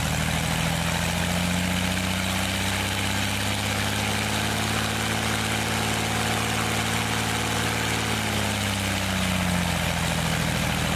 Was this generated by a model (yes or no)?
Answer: no